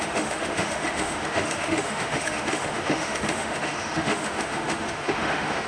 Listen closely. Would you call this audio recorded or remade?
remade